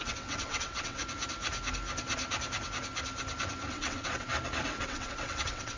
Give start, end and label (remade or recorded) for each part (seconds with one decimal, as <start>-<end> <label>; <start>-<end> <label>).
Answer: 0.0-1.0 remade; 1.0-3.7 recorded; 3.7-4.3 remade; 4.3-4.8 recorded; 4.8-5.8 remade